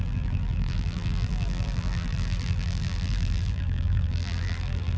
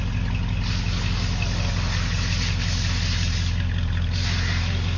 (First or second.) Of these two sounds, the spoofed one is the first